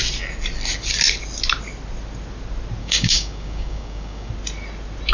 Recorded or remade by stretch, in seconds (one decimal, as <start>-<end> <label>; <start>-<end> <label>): 0.0-2.8 recorded; 2.8-4.3 remade; 4.3-5.1 recorded